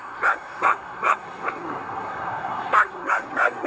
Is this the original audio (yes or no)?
no